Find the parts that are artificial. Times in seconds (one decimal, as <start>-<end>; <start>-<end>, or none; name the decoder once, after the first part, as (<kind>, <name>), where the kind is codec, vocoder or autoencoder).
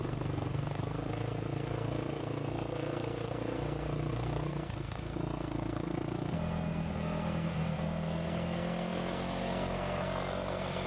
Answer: 0.0-10.9 (codec, SNAC)